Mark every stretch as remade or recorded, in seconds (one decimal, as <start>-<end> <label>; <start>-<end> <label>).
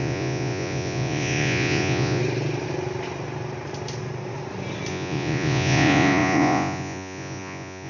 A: 0.0-2.2 remade; 2.2-4.9 recorded; 4.9-7.9 remade